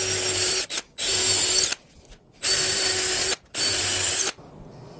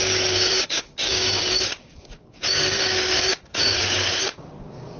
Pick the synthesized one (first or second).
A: second